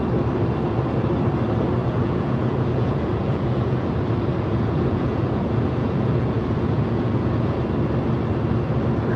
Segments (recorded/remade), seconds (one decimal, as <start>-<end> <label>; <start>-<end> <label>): 0.0-1.8 recorded; 1.8-3.9 remade; 3.9-4.3 recorded; 4.3-7.6 remade; 7.6-9.2 recorded